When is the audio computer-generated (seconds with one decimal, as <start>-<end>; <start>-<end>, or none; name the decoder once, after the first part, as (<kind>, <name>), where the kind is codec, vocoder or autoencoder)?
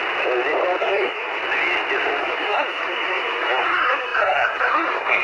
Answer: 0.8-1.4 (codec, SNAC); 2.2-5.2